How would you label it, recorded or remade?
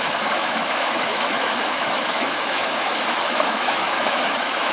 remade